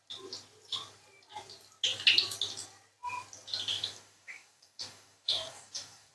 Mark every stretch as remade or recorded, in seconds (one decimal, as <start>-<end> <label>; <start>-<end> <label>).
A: 0.0-3.7 recorded; 3.7-6.1 remade